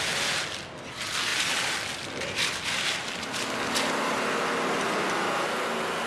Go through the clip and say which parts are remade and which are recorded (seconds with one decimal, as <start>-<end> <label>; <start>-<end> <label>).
0.0-6.1 recorded